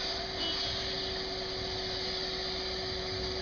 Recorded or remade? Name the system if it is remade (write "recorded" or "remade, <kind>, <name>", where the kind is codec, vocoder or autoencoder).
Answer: recorded